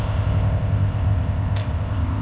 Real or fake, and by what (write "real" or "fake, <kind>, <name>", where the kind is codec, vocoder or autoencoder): fake, codec, ZipCodec